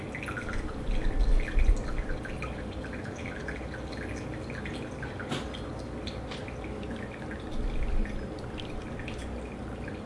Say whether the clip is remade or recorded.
recorded